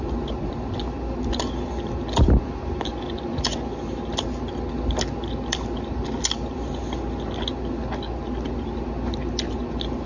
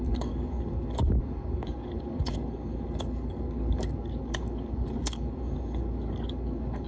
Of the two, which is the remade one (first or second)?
second